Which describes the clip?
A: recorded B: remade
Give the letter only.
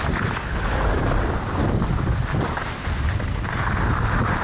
A